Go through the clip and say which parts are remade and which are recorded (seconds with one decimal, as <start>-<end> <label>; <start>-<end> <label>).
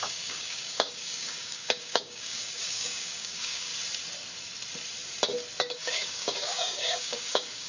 0.0-3.7 remade; 3.7-5.6 recorded; 5.6-7.7 remade